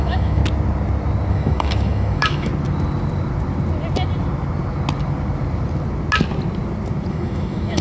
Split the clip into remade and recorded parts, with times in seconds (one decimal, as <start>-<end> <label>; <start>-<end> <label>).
0.0-0.4 remade; 0.4-1.3 recorded; 1.3-2.5 remade; 2.5-7.1 recorded; 7.1-7.8 remade